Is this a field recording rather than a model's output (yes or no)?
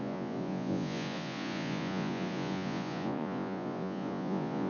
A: no